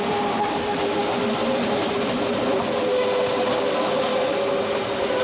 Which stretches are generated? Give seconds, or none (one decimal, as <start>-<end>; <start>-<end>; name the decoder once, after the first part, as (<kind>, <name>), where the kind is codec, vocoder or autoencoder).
none